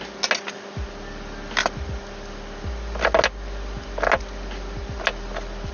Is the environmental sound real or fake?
real